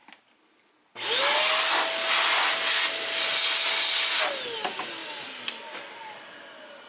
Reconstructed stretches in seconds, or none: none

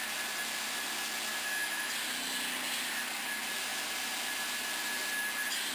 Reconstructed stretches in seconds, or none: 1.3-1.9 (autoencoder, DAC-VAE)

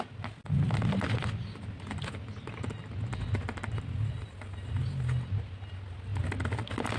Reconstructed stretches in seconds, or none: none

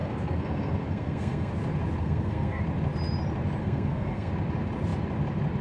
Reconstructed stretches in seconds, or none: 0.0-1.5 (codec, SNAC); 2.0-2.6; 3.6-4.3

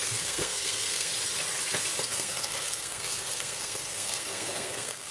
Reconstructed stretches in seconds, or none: 0.0-1.1 (codec, SNAC); 2.0-5.1

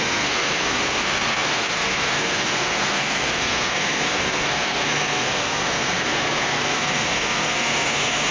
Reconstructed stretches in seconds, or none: 0.0-8.3 (codec, SNAC)

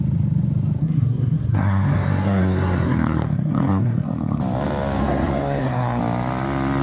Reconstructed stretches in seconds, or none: 0.8-4.4 (codec, SNAC); 5.0-6.0

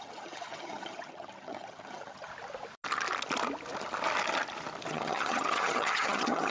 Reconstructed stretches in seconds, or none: 0.0-2.3 (vocoder, HiFi-GAN); 4.9-6.5